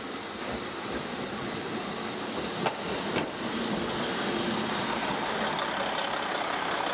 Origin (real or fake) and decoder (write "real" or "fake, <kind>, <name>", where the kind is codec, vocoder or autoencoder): real